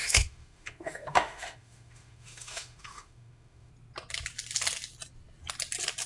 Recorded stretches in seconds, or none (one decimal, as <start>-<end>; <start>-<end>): 3.7-6.1